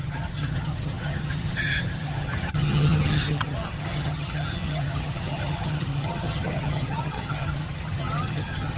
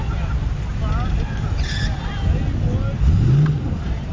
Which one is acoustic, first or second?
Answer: second